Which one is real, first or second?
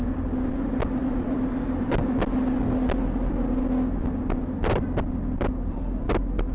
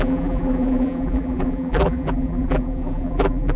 first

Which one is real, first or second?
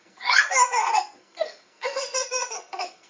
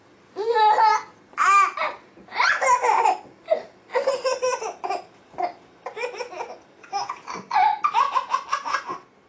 second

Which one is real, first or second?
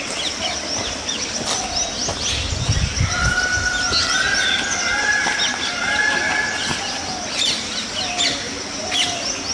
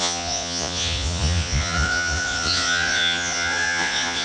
first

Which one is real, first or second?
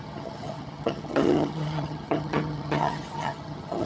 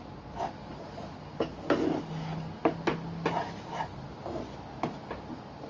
second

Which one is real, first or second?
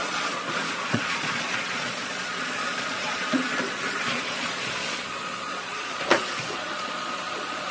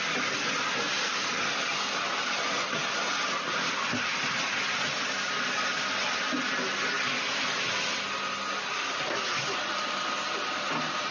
second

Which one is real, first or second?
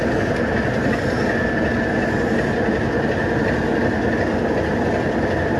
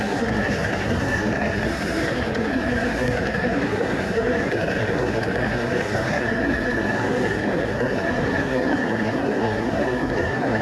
first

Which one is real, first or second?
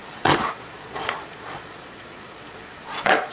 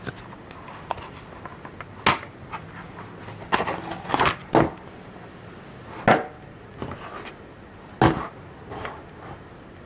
second